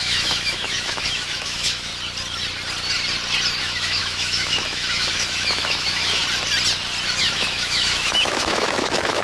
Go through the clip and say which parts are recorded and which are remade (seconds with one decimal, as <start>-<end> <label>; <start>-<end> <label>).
0.0-1.9 remade; 1.9-3.6 recorded; 3.6-6.2 remade; 6.2-7.2 recorded; 7.2-9.2 remade